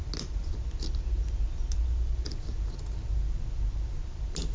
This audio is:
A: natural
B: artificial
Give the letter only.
A